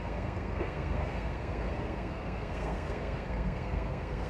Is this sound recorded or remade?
remade